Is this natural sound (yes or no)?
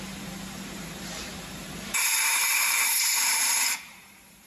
no